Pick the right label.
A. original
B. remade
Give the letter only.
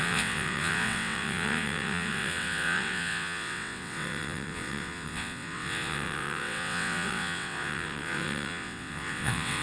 B